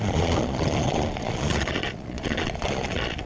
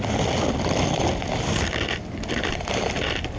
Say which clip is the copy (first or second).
first